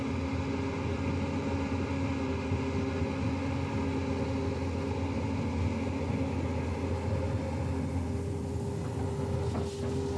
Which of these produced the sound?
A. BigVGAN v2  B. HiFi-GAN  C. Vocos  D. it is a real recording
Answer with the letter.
D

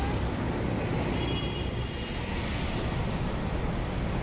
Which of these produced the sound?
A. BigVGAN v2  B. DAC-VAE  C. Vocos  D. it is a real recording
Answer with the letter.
D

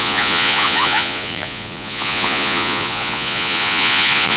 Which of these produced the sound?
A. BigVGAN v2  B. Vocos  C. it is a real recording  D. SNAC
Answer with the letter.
B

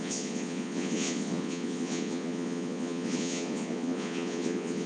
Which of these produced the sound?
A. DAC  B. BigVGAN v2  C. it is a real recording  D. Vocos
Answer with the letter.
D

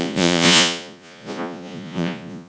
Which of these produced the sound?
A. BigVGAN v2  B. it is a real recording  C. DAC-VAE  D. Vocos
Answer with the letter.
D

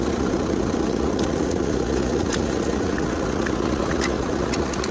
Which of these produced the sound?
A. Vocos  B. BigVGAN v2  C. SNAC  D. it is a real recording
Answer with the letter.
A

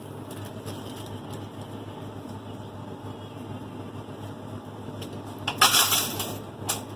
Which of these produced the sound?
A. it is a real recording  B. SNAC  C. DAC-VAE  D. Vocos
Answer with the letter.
A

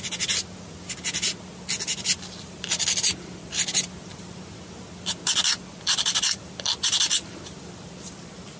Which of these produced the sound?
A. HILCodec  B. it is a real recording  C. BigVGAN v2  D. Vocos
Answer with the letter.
B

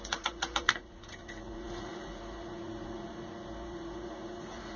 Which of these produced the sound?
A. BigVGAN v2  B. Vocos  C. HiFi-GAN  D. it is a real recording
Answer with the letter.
B